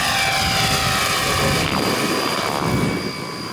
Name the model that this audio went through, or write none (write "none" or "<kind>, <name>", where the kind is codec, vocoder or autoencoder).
none